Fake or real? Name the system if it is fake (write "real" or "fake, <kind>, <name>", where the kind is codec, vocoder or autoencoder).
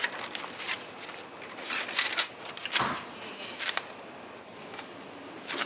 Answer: real